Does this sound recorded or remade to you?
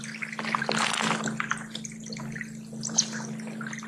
recorded